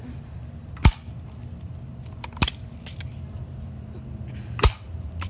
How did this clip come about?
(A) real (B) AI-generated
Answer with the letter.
A